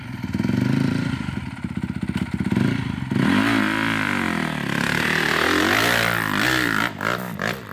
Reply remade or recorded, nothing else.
remade